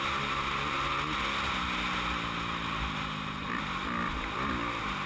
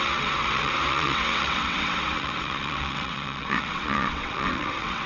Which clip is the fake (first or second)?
second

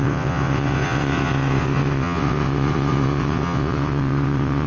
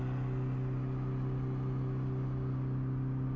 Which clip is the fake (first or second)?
first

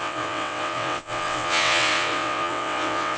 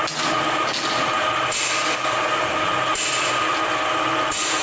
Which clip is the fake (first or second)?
first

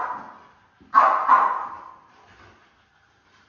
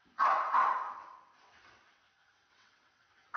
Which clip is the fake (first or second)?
second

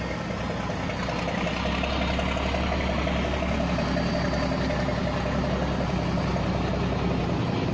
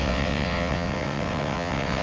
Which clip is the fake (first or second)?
second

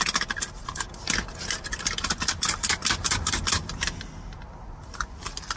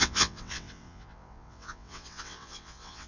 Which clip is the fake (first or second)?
second